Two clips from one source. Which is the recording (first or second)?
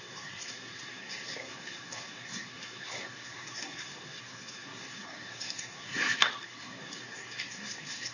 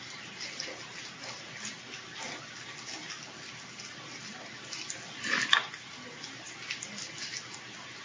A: second